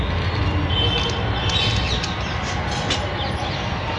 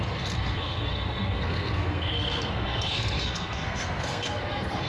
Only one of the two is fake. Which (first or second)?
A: second